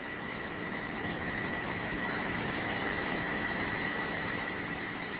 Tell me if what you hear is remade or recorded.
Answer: remade